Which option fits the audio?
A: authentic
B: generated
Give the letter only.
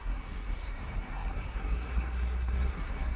B